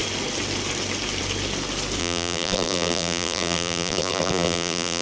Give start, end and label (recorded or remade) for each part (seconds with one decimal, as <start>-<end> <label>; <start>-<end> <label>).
0.0-2.0 recorded; 2.0-5.0 remade